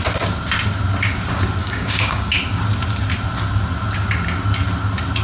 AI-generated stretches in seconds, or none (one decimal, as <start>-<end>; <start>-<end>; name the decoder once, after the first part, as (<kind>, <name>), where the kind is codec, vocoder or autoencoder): 1.6-2.3 (codec, DAC)